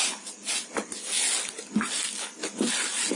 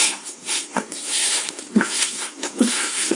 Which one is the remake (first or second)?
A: second